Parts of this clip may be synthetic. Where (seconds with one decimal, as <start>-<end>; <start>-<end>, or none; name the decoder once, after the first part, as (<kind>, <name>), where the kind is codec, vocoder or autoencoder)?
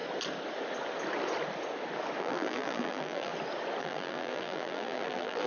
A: 2.2-3.3 (vocoder, BigVGAN v2); 3.8-5.5